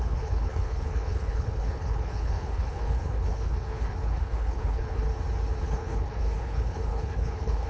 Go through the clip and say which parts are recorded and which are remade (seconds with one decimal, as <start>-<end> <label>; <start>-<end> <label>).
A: 0.0-5.1 remade; 5.1-5.6 recorded; 5.6-7.7 remade